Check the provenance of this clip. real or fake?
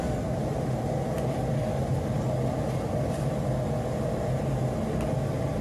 real